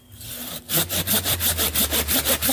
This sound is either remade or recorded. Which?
recorded